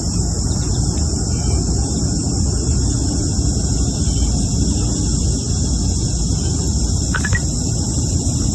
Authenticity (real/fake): real